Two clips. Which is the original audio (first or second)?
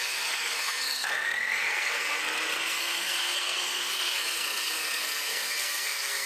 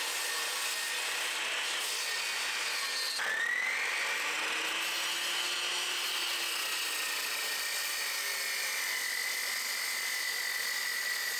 second